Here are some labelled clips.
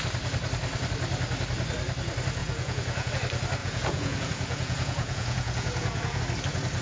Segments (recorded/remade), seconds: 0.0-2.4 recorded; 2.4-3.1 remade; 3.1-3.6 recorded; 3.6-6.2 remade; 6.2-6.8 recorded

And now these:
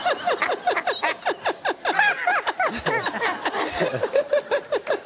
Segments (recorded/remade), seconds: 0.0-5.1 recorded

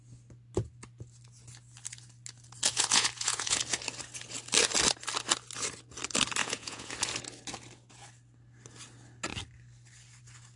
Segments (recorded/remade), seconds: 0.0-2.7 recorded; 2.7-3.6 remade; 3.6-6.4 recorded; 6.4-6.9 remade; 6.9-10.6 recorded

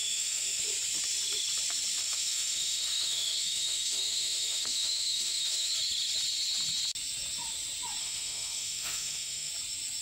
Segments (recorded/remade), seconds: 0.0-0.6 remade; 0.6-2.0 recorded; 2.0-5.7 remade; 5.7-8.0 recorded; 8.0-9.5 remade; 9.5-10.0 recorded

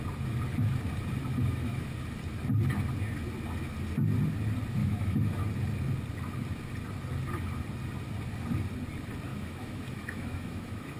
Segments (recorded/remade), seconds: 0.0-1.3 recorded; 1.3-1.9 remade; 1.9-4.8 recorded; 4.8-5.3 remade; 5.3-9.3 recorded; 9.3-11.0 remade